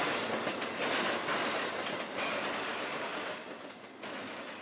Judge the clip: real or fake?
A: real